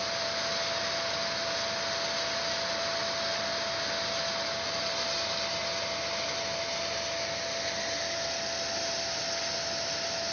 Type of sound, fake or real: real